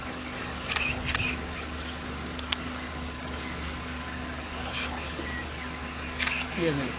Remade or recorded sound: remade